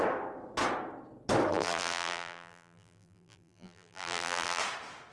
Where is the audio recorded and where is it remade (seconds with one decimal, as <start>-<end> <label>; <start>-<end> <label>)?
0.0-1.5 recorded; 1.5-4.6 remade; 4.6-5.1 recorded